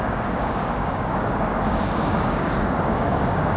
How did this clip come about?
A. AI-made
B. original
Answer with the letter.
A